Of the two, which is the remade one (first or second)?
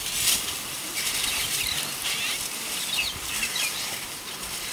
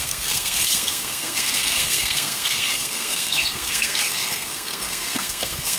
second